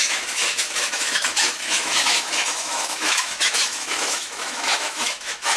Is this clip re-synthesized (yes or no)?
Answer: yes